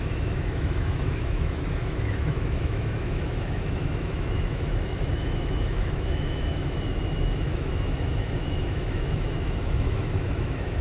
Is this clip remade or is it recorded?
remade